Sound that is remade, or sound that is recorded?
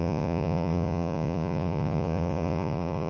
remade